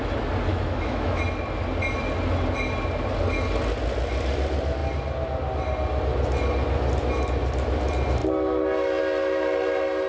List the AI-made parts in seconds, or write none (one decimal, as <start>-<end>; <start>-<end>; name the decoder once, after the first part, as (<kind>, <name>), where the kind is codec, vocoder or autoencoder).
0.5-1.2 (autoencoder, DAC-VAE)

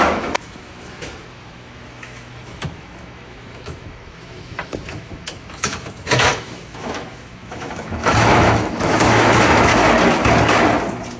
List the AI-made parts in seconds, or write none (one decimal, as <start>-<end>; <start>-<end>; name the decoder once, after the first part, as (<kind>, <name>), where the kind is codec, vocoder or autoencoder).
0.0-9.7 (autoencoder, DAC-VAE)

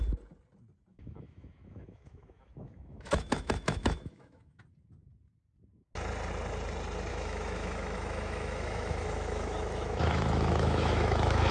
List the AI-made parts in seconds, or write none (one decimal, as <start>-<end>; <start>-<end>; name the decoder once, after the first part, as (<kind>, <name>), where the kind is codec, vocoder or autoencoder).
0.9-4.6 (autoencoder, DAC-VAE); 7.1-11.5

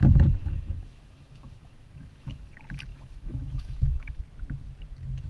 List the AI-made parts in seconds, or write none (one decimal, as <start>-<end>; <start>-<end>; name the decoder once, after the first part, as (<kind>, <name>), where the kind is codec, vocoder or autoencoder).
0.4-2.5 (autoencoder, DAC-VAE); 2.9-4.2

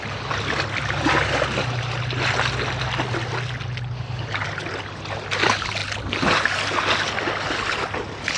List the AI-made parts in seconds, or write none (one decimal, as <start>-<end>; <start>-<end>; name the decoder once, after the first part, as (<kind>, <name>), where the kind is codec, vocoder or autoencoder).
none